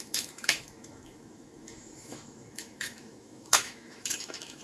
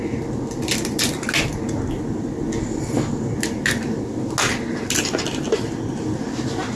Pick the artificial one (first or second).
first